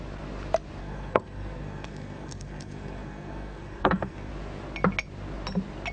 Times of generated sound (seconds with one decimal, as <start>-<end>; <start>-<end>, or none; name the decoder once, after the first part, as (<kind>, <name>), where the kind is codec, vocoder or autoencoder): 0.8-4.3 (codec, SNAC)